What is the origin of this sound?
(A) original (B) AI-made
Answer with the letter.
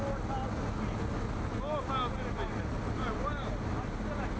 A